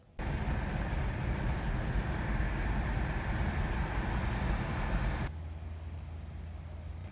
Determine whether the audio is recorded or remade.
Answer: recorded